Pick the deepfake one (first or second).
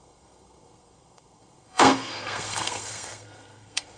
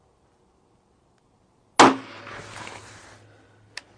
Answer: first